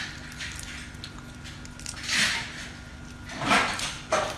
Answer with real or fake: real